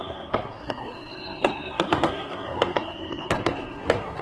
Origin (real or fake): fake